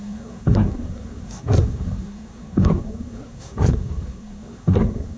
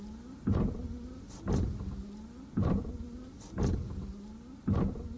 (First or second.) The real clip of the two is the second